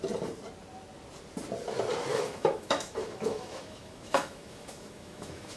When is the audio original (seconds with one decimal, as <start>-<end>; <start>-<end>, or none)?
0.0-2.1